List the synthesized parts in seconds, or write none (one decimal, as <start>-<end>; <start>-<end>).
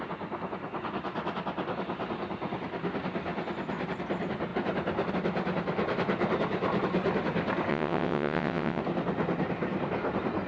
7.7-8.8